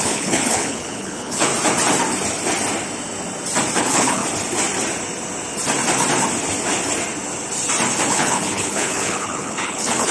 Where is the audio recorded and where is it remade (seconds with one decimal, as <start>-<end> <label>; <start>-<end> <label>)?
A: 0.0-1.5 remade; 1.5-3.8 recorded; 3.8-4.2 remade; 4.2-8.1 recorded; 8.1-10.1 remade